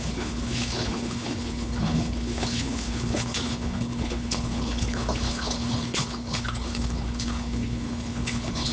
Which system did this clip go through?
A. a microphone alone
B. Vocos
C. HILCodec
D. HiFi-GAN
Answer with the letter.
C